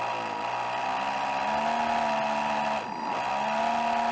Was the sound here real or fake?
real